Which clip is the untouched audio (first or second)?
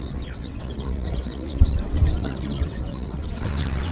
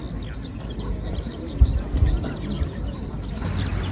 second